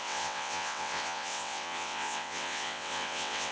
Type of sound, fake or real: fake